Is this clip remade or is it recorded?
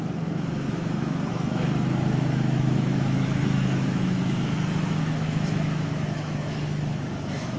remade